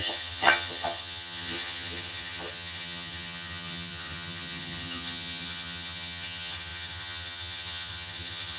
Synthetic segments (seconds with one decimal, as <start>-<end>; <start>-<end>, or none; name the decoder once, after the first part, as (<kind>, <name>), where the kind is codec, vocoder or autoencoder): 0.0-8.6 (vocoder, HiFi-GAN)